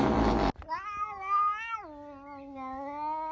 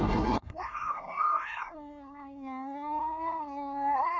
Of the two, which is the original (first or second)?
first